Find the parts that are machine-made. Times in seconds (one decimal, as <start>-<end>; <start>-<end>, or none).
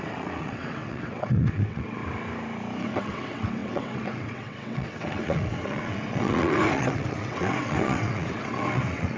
0.0-2.0; 2.8-9.2